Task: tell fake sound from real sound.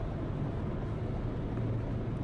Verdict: real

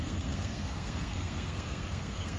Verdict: fake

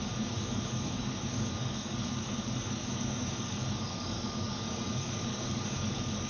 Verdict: fake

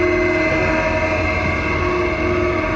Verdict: real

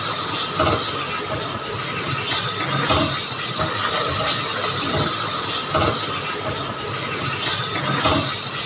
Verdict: real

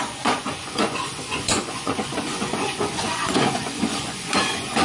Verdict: fake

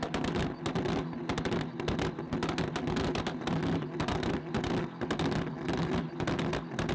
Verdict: real